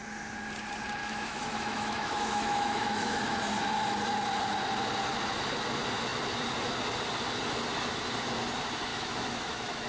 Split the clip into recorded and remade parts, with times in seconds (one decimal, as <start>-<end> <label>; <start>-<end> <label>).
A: 0.0-1.0 recorded; 1.0-3.2 remade; 3.2-8.9 recorded; 8.9-9.9 remade